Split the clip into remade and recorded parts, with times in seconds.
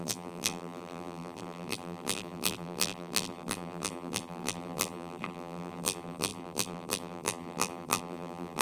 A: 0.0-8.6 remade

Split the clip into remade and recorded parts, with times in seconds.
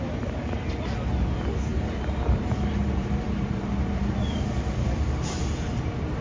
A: 0.0-1.7 recorded; 1.7-5.4 remade; 5.4-6.2 recorded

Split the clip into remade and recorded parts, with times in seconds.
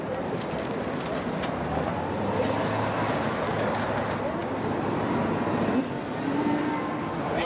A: 0.0-4.4 recorded; 4.4-7.4 remade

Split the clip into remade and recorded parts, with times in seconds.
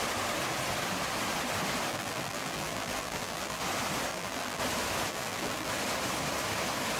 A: 0.0-1.9 recorded; 1.9-3.6 remade; 3.6-4.1 recorded; 4.1-4.6 remade; 4.6-5.1 recorded; 5.1-5.7 remade; 5.7-7.0 recorded